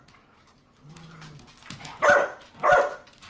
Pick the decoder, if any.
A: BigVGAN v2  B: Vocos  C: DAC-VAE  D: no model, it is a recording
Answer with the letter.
D